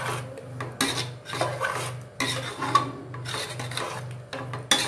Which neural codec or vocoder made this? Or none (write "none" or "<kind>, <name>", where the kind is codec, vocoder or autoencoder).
none